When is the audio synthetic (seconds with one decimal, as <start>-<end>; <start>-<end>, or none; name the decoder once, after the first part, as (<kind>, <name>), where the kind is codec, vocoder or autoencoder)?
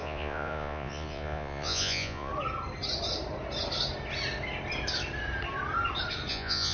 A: 0.0-2.3 (vocoder, Vocos); 6.3-6.7